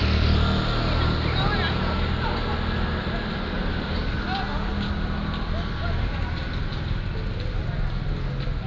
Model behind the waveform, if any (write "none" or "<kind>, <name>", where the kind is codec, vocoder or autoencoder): none